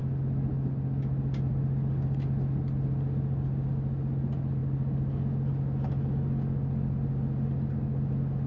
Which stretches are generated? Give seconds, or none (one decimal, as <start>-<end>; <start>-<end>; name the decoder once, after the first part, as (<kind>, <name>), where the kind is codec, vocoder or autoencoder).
none